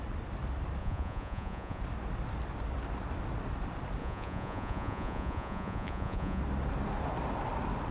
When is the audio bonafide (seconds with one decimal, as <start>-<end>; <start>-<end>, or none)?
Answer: 0.0-0.8; 1.8-4.0; 6.4-7.9